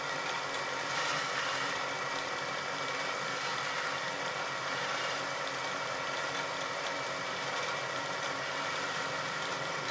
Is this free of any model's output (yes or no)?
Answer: no